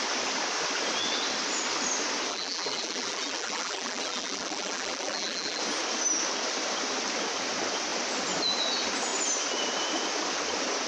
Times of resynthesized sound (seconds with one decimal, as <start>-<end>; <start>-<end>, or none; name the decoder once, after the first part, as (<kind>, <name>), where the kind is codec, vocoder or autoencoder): 2.3-5.6 (vocoder, BigVGAN v2)